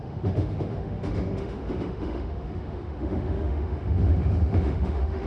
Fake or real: fake